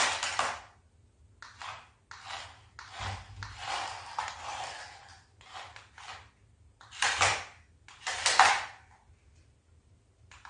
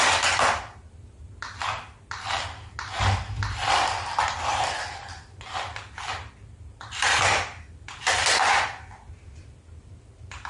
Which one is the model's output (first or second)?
second